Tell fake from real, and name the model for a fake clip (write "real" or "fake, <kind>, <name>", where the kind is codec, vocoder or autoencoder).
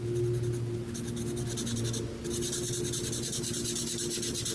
real